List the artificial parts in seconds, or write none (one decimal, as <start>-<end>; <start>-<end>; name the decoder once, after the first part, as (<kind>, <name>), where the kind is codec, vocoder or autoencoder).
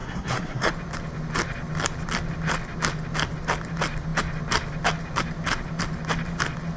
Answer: 0.0-0.7 (codec, SNAC)